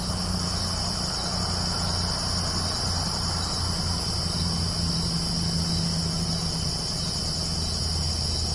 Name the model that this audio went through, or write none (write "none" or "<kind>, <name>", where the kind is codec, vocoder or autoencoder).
none